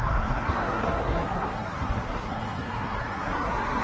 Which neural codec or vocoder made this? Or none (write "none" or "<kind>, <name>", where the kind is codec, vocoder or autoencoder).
codec, SNAC